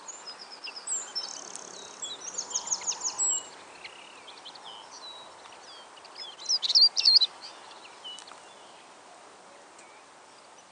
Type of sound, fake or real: real